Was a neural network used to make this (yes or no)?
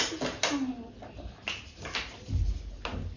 no